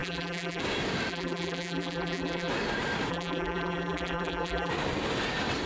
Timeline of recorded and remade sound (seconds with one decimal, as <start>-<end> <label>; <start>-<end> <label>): 0.0-0.6 remade; 0.6-1.1 recorded; 1.1-2.5 remade; 2.5-3.1 recorded; 3.1-4.7 remade; 4.7-5.7 recorded